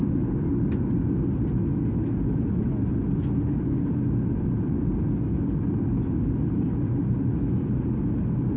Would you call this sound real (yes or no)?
yes